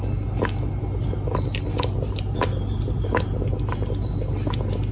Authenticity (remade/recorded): recorded